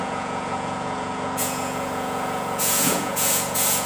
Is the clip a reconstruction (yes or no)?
yes